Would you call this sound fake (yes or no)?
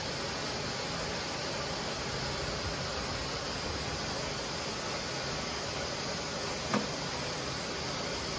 no